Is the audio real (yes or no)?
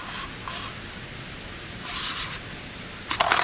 yes